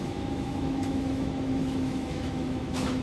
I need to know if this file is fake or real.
fake